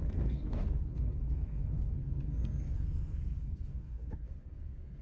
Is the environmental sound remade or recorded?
remade